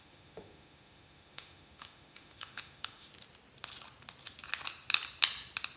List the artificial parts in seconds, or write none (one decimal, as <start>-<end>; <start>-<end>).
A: 0.0-3.1